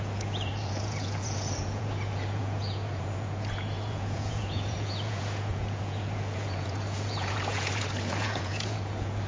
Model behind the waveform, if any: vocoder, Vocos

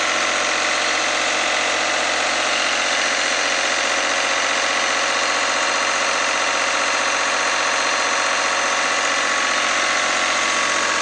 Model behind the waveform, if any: none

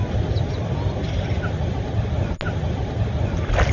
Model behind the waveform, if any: none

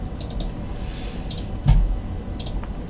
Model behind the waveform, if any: none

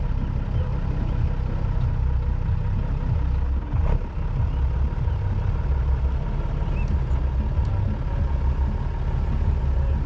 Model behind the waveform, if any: none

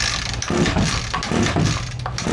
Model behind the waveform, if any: none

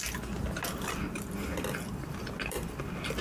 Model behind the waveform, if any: none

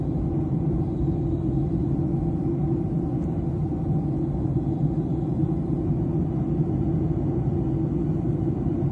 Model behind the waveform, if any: none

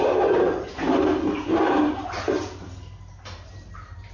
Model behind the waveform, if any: none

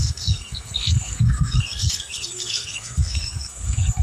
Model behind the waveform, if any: codec, SNAC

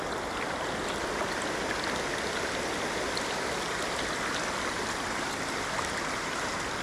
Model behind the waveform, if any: none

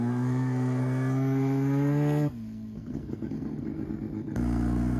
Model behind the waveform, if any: codec, SNAC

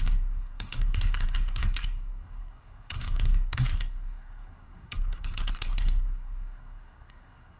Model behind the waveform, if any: codec, SNAC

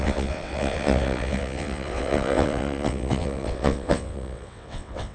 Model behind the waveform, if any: vocoder, WaveNeXt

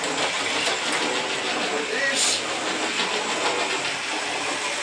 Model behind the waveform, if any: none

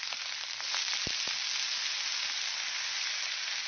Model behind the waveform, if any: none